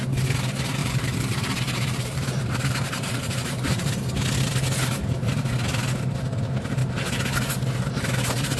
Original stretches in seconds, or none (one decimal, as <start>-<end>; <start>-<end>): 0.0-0.8; 3.9-8.6